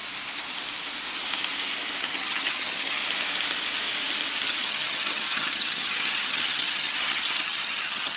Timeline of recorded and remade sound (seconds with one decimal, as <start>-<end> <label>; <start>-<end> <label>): 0.0-2.0 recorded; 2.0-3.0 remade; 3.0-4.5 recorded; 4.5-8.2 remade